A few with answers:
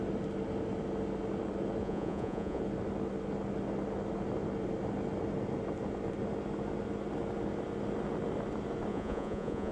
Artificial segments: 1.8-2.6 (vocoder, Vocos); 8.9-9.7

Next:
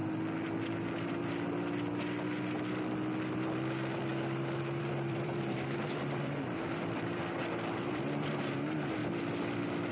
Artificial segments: 3.3-4.1 (vocoder, BigVGAN v2); 4.8-9.0

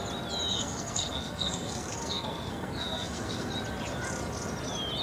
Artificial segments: 0.5-3.5 (codec, SNAC)